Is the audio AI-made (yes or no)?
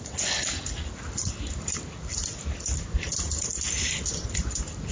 no